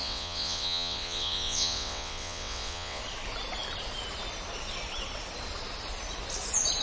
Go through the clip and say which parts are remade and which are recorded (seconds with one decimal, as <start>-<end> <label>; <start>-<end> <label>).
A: 0.0-3.0 remade; 3.0-6.8 recorded